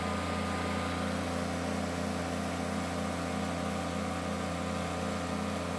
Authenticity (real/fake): real